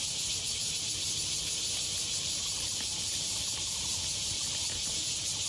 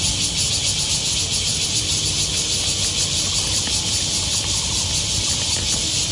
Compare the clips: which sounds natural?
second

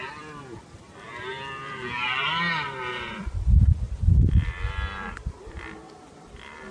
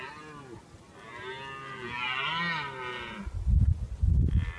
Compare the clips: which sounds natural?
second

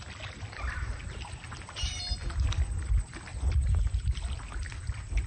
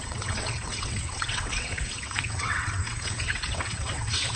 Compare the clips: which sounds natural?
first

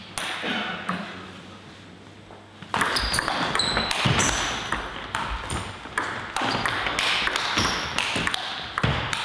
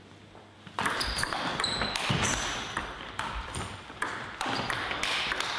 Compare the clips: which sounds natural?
first